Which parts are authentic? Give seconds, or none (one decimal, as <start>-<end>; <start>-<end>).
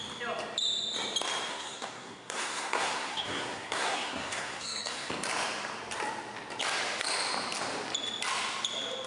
0.0-1.5; 5.1-9.1